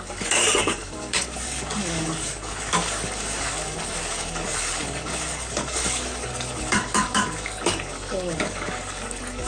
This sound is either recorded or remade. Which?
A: remade